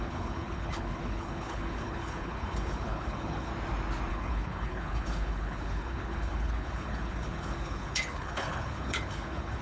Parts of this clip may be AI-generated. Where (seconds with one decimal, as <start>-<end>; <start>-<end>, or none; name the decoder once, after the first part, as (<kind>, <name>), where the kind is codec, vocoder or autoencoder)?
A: 0.0-3.5 (codec, HILCodec); 4.1-9.6